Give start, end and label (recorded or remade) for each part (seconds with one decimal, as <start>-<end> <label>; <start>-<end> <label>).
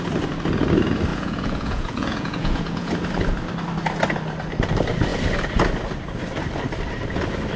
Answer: 0.0-1.1 recorded; 1.1-2.9 remade; 2.9-7.6 recorded